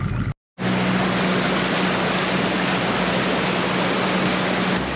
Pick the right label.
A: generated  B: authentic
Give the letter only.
B